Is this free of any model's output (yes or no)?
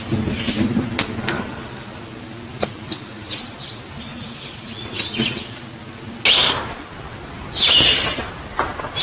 yes